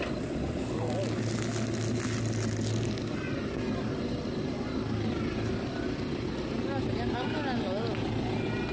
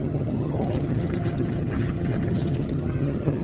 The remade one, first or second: second